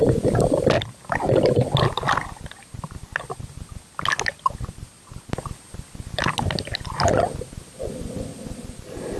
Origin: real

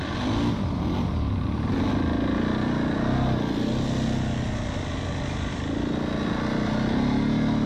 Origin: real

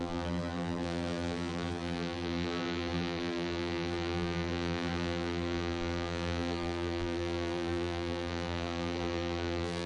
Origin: fake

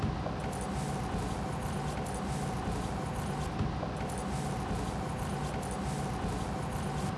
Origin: real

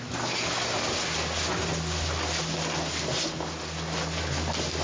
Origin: real